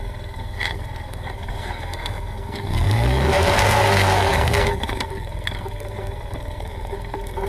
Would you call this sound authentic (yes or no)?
no